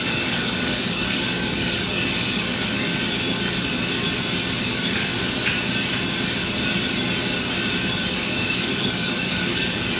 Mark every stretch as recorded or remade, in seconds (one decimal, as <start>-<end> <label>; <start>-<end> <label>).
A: 0.0-2.9 remade; 2.9-4.6 recorded; 4.6-5.1 remade; 5.1-8.1 recorded; 8.1-10.0 remade